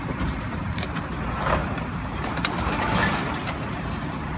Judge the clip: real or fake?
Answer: fake